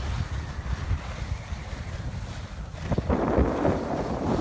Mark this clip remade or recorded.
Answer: recorded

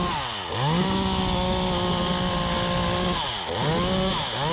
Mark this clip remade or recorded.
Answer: recorded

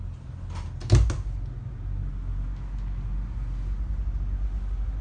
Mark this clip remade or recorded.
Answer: recorded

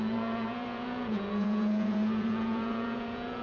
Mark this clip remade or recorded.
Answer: remade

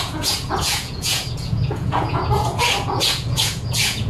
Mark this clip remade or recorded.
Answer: remade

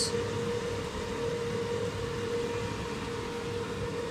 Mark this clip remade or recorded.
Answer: recorded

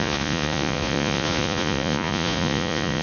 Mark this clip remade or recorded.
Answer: remade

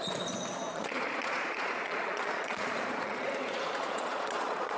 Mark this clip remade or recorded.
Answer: remade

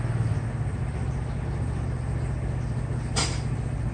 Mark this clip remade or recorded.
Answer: recorded